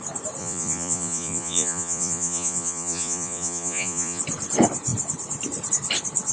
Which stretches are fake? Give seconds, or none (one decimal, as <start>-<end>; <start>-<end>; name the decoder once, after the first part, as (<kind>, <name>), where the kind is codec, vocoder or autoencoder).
0.4-4.2 (vocoder, Vocos)